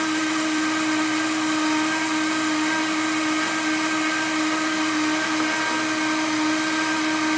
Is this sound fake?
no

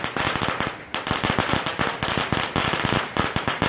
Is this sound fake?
no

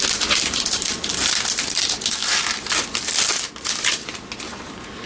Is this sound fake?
no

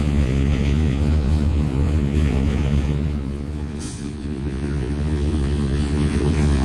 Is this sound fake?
yes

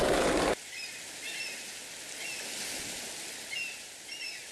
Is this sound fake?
no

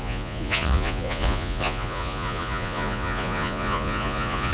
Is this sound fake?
yes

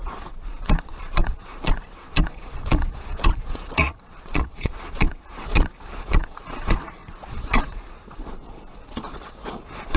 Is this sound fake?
yes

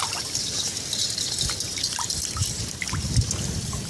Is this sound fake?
no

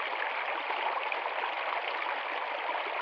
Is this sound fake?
no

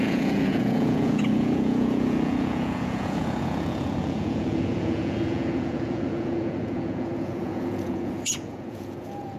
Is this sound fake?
yes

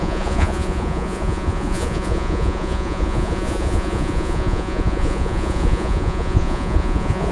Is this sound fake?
yes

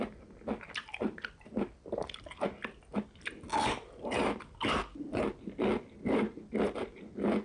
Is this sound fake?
no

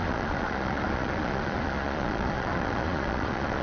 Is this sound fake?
yes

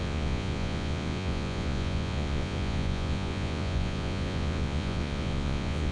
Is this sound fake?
yes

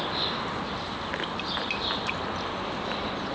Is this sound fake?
no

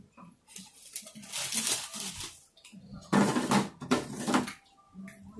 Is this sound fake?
no